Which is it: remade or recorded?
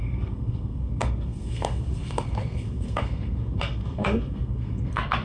remade